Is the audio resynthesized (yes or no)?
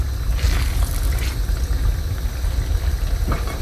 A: no